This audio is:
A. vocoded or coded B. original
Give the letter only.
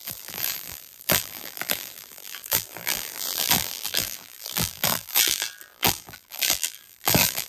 A